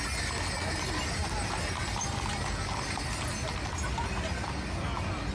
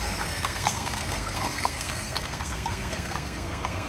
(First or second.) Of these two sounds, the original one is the first